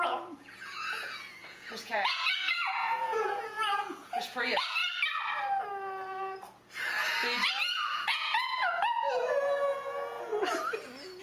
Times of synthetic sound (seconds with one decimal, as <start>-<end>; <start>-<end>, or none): 0.0-4.8; 7.5-10.3